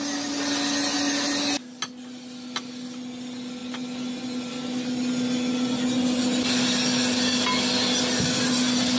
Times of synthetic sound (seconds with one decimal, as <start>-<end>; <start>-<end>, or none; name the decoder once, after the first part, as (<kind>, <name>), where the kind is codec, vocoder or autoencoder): none